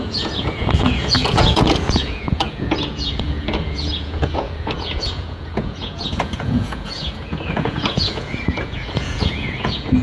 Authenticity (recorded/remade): remade